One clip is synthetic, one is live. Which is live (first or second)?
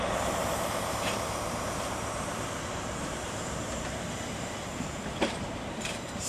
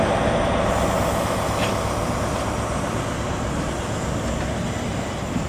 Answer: second